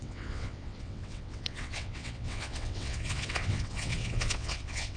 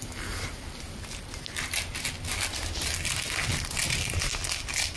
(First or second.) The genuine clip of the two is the second